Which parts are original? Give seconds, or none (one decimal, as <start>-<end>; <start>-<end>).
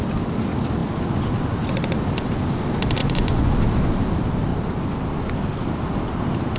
0.0-3.0; 3.5-6.6